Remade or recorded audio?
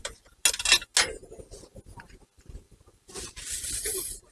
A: recorded